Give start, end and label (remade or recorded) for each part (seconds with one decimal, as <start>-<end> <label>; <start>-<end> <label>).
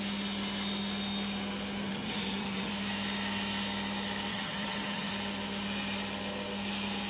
0.0-1.8 recorded; 1.8-2.7 remade; 2.7-4.3 recorded; 4.3-5.1 remade; 5.1-7.1 recorded